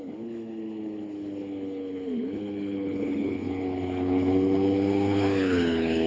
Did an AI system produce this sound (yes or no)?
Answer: yes